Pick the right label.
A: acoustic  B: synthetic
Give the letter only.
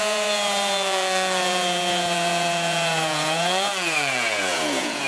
B